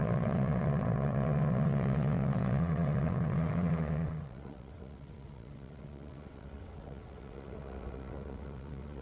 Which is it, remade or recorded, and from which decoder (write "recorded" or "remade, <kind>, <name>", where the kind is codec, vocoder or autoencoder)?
remade, vocoder, WaveNeXt